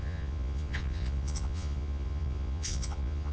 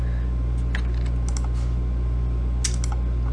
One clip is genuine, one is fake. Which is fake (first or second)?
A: first